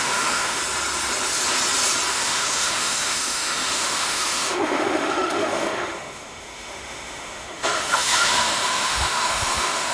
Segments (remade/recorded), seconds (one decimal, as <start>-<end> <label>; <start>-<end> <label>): 0.0-0.6 remade; 0.6-2.1 recorded; 2.1-9.9 remade

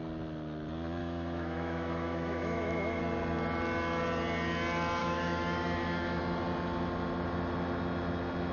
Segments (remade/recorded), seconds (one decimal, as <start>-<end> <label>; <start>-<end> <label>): 0.0-1.0 recorded; 1.0-3.0 remade; 3.0-5.0 recorded; 5.0-6.2 remade; 6.2-8.5 recorded

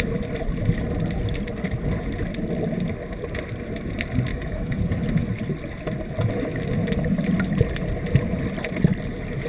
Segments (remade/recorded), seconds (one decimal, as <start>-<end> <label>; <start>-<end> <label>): 0.0-4.3 recorded; 4.3-4.8 remade; 4.8-9.5 recorded

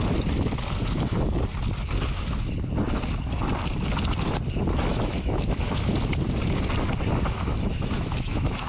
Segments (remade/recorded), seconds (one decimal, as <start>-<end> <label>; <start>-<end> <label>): 0.0-4.9 recorded; 4.9-5.9 remade; 5.9-7.5 recorded; 7.5-8.7 remade